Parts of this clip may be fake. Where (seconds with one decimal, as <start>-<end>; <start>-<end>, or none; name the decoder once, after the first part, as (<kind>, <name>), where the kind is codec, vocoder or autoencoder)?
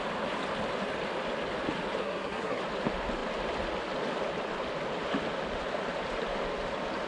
2.0-2.6 (codec, SNAC)